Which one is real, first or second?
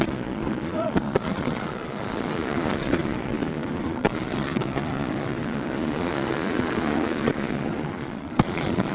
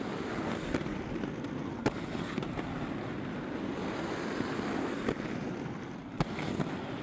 second